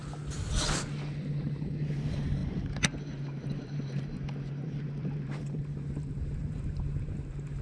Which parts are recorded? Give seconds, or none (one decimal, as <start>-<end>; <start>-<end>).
0.0-1.4